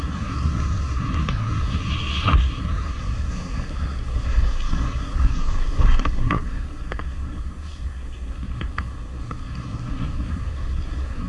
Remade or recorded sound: remade